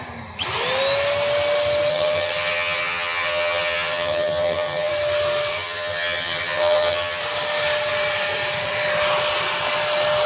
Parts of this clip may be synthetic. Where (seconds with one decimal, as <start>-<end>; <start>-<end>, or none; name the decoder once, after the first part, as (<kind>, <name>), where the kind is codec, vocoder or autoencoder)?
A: 1.9-4.9 (vocoder, HiFi-GAN); 5.5-7.2